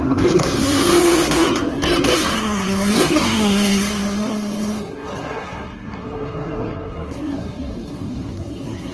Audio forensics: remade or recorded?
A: remade